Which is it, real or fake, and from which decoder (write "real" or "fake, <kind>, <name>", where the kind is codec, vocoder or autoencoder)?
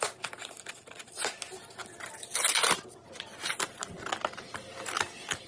real